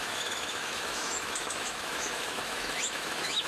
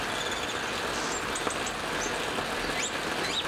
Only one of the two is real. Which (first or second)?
second